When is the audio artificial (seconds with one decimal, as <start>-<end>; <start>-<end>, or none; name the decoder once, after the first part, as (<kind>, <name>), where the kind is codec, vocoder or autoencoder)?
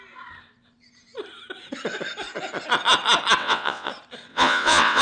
3.4-3.9 (vocoder, WaveNeXt); 4.3-5.0